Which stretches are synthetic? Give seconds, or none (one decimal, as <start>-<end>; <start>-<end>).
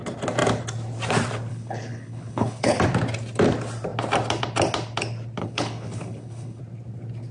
1.5-2.8; 5.4-6.6